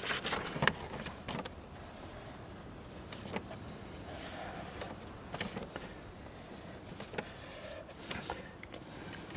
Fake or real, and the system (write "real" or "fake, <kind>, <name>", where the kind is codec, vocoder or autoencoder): real